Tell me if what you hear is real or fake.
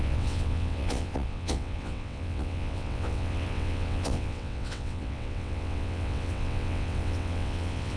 fake